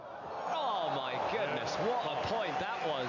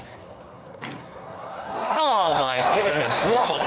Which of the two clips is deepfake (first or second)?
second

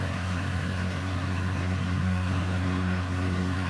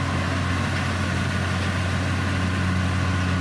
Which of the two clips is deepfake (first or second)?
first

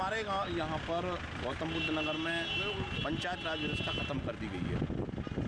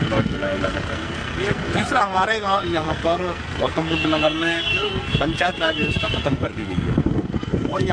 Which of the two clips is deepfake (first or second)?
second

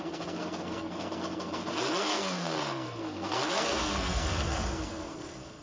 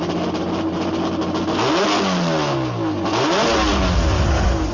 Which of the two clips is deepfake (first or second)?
first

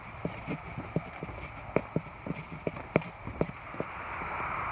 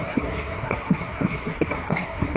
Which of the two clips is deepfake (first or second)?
second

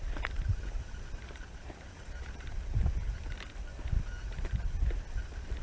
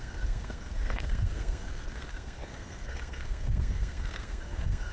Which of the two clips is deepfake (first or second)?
second